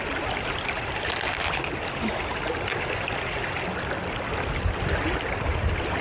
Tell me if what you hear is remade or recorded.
recorded